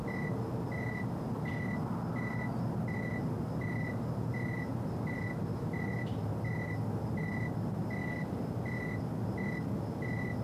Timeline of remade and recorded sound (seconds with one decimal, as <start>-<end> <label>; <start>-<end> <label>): 0.0-10.4 recorded